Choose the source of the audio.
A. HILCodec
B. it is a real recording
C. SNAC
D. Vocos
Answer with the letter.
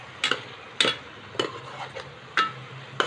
B